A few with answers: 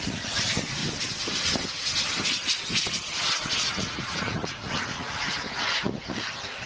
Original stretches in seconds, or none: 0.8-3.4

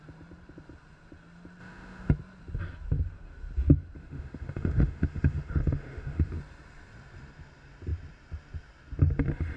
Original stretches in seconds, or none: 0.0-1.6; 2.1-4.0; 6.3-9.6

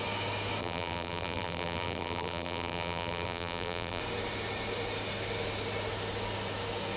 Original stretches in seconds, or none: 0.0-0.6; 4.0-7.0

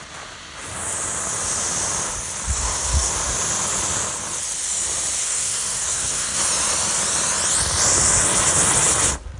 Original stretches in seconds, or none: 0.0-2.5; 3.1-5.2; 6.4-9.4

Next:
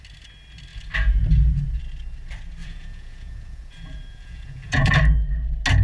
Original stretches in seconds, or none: 0.0-2.6; 4.9-5.8